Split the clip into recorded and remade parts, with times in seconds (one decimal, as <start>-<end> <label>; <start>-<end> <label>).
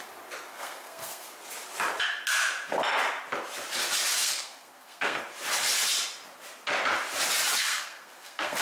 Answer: 0.0-0.5 recorded; 0.5-1.3 remade; 1.3-4.2 recorded; 4.2-5.2 remade; 5.2-7.6 recorded; 7.6-8.6 remade